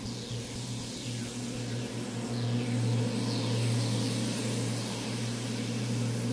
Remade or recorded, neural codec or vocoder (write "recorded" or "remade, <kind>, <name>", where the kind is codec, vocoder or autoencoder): recorded